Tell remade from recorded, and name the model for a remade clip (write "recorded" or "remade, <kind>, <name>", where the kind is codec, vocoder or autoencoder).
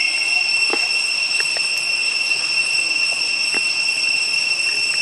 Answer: recorded